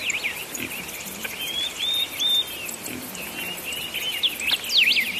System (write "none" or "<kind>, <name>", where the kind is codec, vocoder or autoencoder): none